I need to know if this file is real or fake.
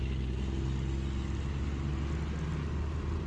real